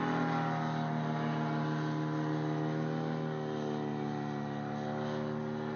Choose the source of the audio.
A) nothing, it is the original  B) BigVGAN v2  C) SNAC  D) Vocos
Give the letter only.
A